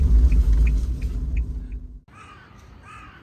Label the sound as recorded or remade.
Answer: recorded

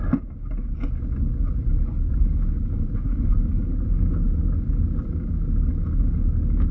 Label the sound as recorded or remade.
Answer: recorded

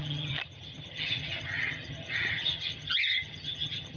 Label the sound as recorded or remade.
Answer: remade